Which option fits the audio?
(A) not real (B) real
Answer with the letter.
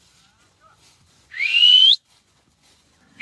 A